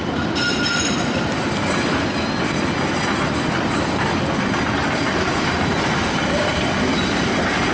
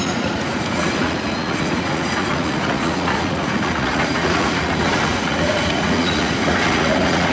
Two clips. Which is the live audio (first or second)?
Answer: first